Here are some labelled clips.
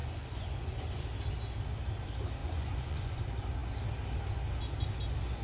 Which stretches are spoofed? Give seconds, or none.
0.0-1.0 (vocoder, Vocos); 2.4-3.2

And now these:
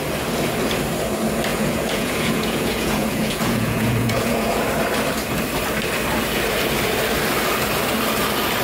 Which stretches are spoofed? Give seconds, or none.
1.5-4.6 (vocoder, Vocos)